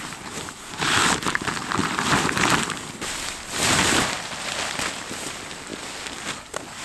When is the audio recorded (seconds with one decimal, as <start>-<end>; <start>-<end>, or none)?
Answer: 0.0-1.8; 5.1-6.8